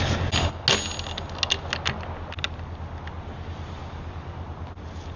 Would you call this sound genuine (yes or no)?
yes